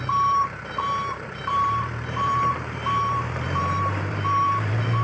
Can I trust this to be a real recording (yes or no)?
no